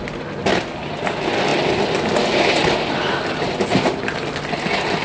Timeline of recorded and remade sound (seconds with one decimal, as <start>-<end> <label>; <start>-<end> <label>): 0.0-5.0 recorded